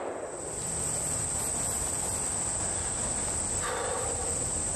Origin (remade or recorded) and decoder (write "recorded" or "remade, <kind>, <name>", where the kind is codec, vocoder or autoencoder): recorded